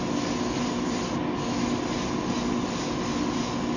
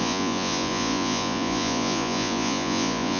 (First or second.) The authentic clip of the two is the first